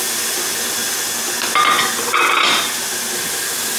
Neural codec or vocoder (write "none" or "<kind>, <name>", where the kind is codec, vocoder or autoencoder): none